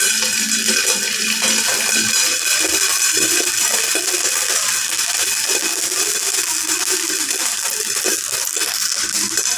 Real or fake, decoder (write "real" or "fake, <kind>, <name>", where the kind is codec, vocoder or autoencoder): real